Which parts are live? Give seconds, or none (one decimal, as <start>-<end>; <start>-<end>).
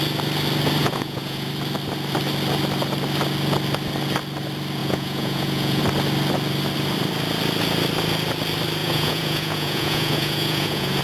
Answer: 0.0-0.8; 1.5-4.8; 5.8-8.8